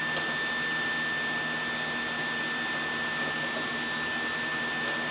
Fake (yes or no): no